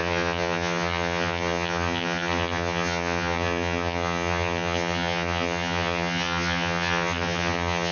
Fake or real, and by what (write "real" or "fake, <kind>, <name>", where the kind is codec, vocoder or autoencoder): fake, vocoder, HiFi-GAN